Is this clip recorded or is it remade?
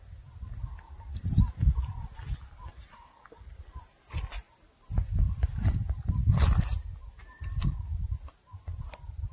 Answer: recorded